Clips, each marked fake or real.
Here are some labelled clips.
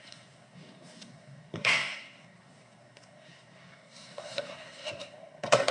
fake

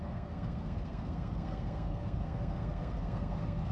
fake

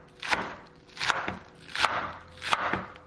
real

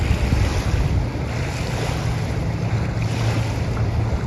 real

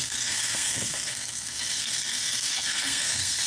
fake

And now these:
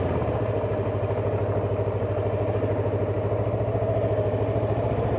real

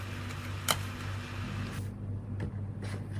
real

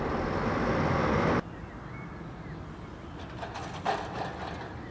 real